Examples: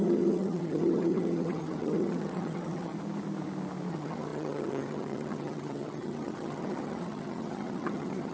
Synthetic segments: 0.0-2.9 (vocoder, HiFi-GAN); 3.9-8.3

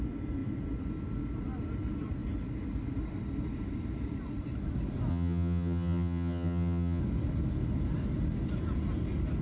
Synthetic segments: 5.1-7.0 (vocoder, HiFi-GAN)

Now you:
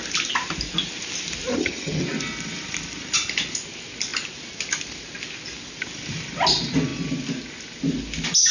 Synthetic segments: 1.5-2.0 (vocoder, HiFi-GAN)

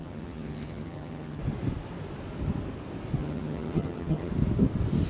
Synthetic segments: 0.0-1.4 (vocoder, HiFi-GAN); 3.2-4.3

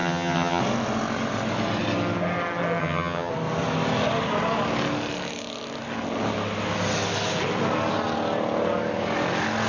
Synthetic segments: 0.0-0.6 (vocoder, HiFi-GAN); 2.8-3.3

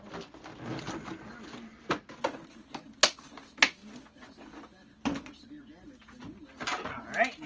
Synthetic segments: none

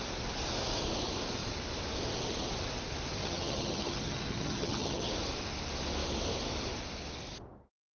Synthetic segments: 3.2-5.1 (vocoder, HiFi-GAN)